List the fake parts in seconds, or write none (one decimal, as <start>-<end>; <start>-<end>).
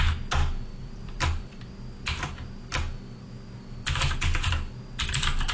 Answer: 0.8-1.6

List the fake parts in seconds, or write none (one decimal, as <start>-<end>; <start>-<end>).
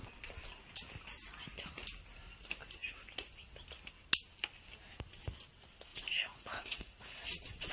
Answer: 5.9-7.7